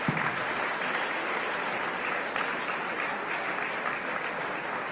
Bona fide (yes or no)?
yes